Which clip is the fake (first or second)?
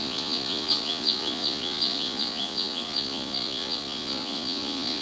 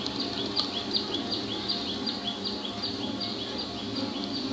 first